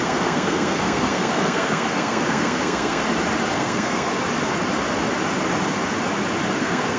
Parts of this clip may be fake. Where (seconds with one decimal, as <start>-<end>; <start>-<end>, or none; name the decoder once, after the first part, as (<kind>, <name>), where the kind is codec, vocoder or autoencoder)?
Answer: 0.0-3.0 (codec, SNAC); 3.5-4.1; 6.6-7.0